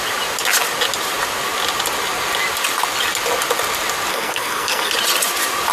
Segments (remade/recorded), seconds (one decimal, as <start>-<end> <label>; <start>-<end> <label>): 0.0-4.1 recorded; 4.1-4.9 remade; 4.9-5.7 recorded

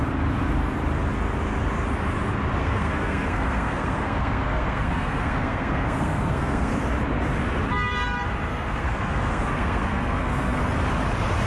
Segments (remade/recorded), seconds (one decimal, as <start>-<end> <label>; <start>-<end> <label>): 0.0-2.6 recorded; 2.6-6.7 remade; 6.7-8.5 recorded; 8.5-10.6 remade; 10.6-11.5 recorded

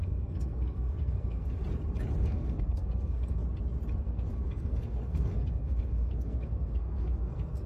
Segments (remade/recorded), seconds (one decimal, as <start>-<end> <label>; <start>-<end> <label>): 0.0-1.6 remade; 1.6-2.2 recorded; 2.2-3.4 remade; 3.4-4.0 recorded; 4.0-7.7 remade

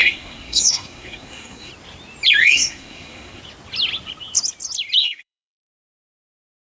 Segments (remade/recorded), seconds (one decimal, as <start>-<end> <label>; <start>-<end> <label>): 0.0-1.7 remade; 1.7-2.4 recorded; 2.4-3.4 remade; 3.4-5.0 recorded; 5.0-5.9 remade; 5.9-6.8 recorded

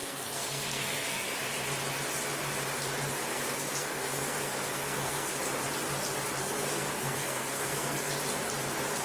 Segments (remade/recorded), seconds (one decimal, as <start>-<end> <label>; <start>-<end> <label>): 0.0-1.4 remade; 1.4-3.3 recorded; 3.3-5.4 remade; 5.4-6.4 recorded; 6.4-8.1 remade; 8.1-9.0 recorded

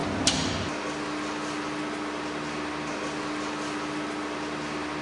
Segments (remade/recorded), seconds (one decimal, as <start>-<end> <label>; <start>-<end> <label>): 0.0-5.0 recorded

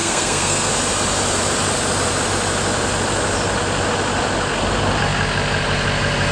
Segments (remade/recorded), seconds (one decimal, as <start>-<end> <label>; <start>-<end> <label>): 0.0-0.7 remade; 0.7-6.3 recorded